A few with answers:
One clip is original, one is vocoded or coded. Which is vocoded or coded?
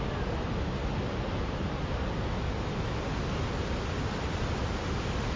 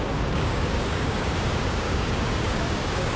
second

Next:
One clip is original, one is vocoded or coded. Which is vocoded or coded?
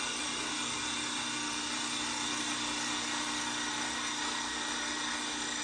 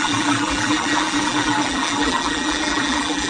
second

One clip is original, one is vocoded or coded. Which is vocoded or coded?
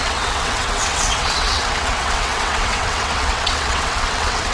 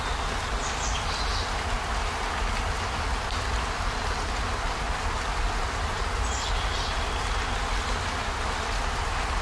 first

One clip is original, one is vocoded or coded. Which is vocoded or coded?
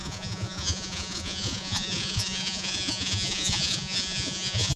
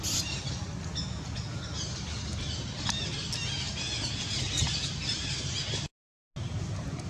first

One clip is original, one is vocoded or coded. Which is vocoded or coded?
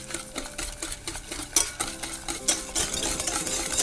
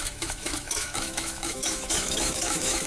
second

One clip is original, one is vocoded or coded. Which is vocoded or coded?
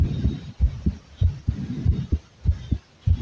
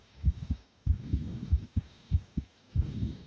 second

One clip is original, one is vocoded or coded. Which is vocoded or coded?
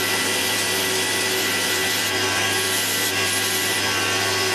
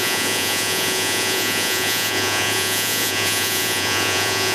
second